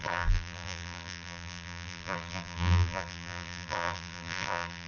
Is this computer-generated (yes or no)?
yes